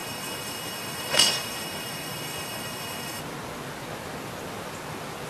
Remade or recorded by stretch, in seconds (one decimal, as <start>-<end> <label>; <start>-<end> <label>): 0.0-3.2 remade; 3.2-5.3 recorded